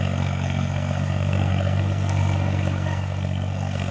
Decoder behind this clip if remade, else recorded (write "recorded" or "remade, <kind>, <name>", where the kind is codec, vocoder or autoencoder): remade, codec, SNAC